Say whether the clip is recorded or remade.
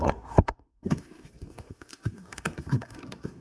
remade